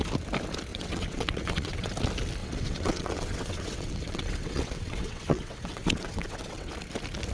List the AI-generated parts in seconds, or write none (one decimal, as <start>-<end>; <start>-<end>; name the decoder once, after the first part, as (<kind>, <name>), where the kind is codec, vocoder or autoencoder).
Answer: 0.7-1.9 (vocoder, WaveNeXt); 2.4-6.7